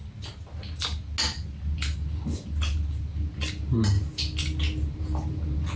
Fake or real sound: real